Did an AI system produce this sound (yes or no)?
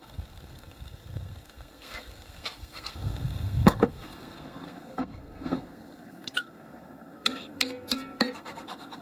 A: yes